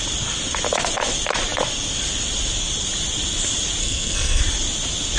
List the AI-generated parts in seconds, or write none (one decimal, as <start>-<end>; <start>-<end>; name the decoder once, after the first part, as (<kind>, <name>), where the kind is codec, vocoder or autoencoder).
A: 3.8-4.4 (codec, SNAC)